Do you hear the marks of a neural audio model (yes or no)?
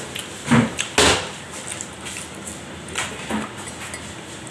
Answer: no